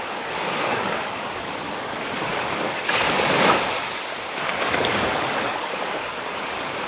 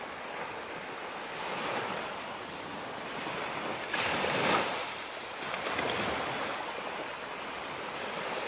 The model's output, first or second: first